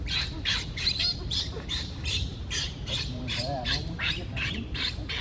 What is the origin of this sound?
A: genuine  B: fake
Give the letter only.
B